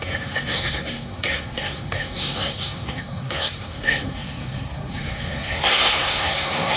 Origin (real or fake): fake